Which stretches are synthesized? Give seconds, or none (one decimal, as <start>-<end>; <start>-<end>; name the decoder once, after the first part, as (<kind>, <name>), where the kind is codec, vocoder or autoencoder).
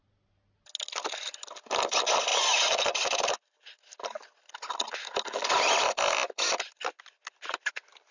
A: none